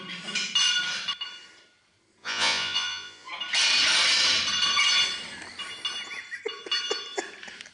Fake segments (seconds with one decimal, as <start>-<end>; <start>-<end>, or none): 2.2-3.3